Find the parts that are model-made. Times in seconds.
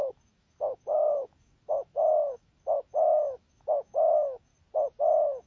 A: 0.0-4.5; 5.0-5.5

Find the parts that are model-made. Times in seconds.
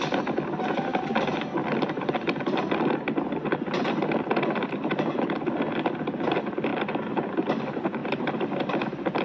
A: 6.7-7.6